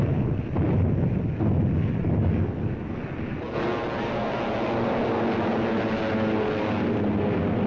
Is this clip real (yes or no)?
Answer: yes